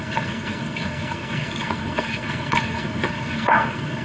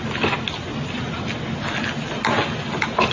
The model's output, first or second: first